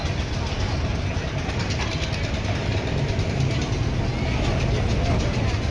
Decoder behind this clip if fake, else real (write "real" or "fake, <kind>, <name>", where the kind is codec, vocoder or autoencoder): real